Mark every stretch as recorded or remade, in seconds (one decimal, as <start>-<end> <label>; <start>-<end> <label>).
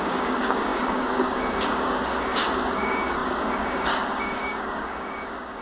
0.0-5.6 remade